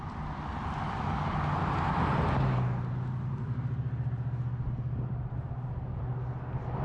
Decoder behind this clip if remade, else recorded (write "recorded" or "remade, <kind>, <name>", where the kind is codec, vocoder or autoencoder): recorded